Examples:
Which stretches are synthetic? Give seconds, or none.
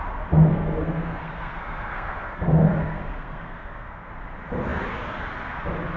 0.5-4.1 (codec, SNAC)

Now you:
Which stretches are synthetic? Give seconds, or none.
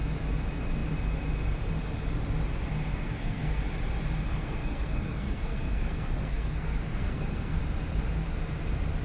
2.9-3.6 (codec, SNAC); 4.3-7.6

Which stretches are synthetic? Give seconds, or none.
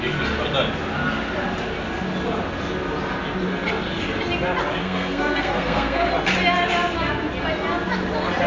4.8-6.1 (codec, SNAC)